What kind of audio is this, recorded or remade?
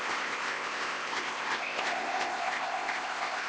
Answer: remade